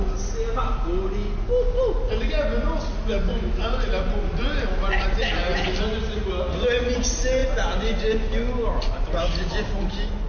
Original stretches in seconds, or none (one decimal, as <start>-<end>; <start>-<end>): 0.0-10.3